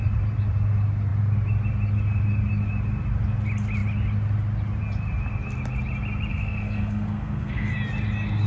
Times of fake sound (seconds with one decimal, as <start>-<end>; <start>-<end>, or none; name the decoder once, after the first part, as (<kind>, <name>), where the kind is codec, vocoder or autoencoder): 6.3-7.7 (codec, SNAC)